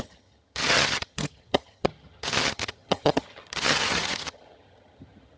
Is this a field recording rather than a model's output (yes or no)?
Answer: no